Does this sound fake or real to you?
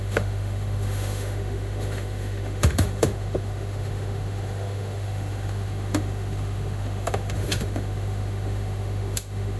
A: fake